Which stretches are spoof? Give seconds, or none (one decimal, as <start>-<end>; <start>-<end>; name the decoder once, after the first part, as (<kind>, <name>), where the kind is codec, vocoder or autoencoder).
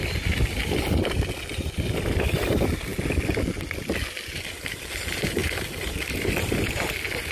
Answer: 0.0-2.9 (vocoder, BigVGAN v2); 4.3-7.3